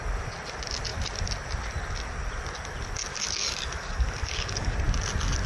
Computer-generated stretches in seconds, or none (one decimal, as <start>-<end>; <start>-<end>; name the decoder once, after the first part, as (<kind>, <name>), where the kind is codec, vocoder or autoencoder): 3.1-4.7 (codec, DAC)